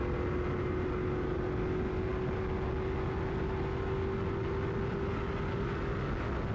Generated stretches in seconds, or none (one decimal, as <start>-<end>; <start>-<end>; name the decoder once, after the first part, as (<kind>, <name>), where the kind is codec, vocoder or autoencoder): none